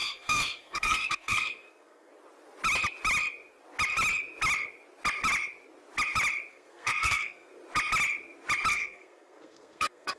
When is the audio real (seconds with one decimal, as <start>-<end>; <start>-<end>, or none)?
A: 2.1-6.5; 7.5-8.7